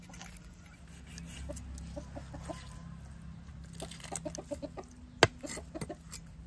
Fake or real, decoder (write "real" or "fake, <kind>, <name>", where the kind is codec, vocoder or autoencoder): real